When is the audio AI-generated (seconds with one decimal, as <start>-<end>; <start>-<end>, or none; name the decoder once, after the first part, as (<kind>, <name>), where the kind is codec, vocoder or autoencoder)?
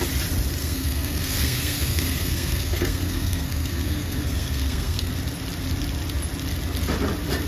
0.6-5.1 (codec, SNAC)